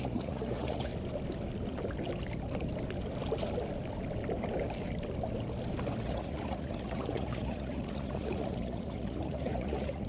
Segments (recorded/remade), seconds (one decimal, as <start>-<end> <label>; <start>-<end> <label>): 0.0-0.9 remade; 0.9-6.0 recorded; 6.0-10.1 remade